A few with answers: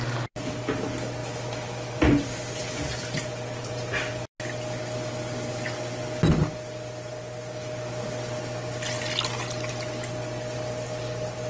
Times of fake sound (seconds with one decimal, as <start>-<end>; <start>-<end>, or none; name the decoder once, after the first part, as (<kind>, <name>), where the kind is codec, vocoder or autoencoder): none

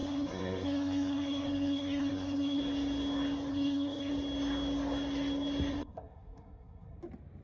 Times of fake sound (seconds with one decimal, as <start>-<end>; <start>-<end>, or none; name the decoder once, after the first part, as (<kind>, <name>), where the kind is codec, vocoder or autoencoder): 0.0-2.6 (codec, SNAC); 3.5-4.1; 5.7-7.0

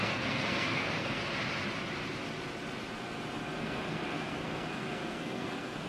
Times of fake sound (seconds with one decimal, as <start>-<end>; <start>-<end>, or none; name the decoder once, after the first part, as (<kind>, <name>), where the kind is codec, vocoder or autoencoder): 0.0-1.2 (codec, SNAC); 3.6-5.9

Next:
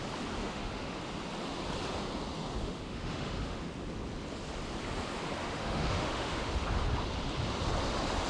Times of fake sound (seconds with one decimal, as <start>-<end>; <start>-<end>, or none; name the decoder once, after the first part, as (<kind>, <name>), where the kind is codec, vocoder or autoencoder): 0.4-1.0 (autoencoder, DAC-VAE); 2.6-3.6; 5.4-6.5

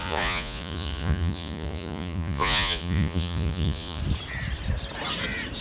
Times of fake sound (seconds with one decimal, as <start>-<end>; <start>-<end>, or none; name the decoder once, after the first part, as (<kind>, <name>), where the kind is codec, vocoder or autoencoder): 0.0-4.0 (vocoder, Vocos)